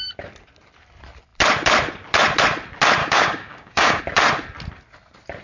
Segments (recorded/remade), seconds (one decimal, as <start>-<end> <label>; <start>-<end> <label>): 0.0-3.0 recorded; 3.0-4.0 remade; 4.0-5.4 recorded